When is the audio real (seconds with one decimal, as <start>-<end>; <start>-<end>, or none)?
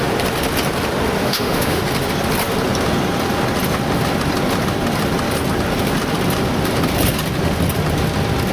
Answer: 0.0-1.2; 1.8-8.5